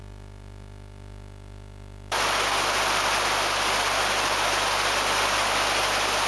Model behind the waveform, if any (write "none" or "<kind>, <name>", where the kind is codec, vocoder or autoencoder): none